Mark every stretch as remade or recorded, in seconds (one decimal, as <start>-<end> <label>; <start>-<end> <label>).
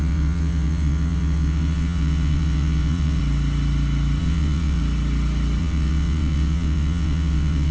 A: 0.0-3.2 remade; 3.2-4.2 recorded; 4.2-4.8 remade; 4.8-5.6 recorded; 5.6-7.7 remade